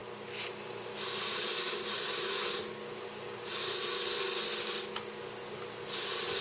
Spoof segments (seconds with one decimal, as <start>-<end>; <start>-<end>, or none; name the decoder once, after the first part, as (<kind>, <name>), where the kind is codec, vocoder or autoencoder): none